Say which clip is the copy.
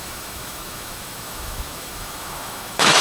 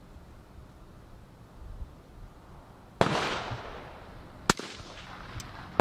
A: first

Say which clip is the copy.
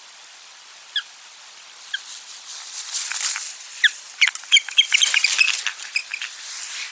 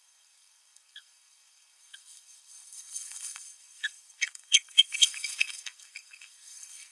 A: second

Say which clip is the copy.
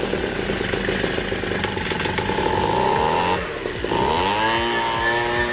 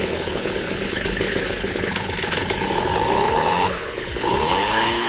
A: second